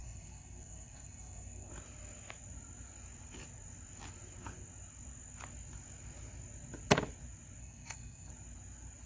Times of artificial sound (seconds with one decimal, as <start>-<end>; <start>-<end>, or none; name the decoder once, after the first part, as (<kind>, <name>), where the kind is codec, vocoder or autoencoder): 0.0-1.7 (codec, SNAC); 7.6-8.3